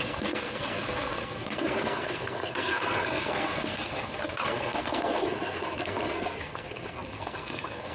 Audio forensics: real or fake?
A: fake